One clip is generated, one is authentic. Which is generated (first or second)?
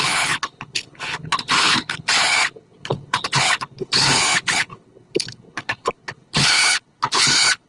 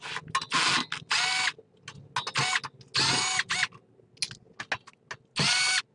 first